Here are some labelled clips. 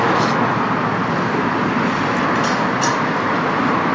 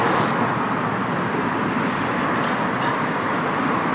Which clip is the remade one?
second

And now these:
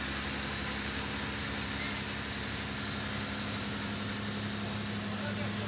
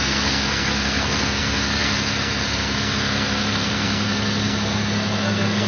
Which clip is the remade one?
second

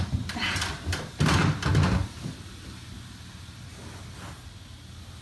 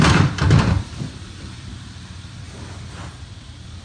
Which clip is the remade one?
second